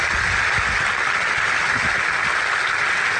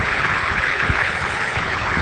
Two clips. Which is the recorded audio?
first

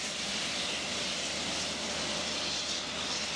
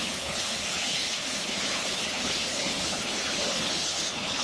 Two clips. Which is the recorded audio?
first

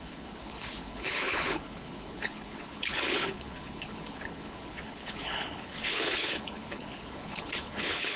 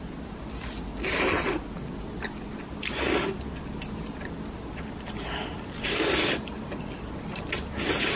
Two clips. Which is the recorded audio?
second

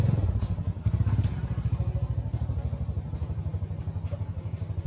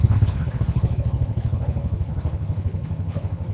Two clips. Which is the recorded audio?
first